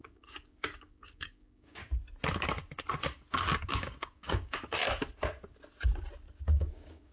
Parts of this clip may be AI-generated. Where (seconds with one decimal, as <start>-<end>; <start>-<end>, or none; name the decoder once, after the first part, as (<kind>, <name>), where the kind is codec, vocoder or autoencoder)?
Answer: 0.0-1.8 (codec, DAC); 3.7-4.8; 6.6-7.1